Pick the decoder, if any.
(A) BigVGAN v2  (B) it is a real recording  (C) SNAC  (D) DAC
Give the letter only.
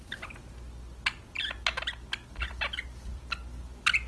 B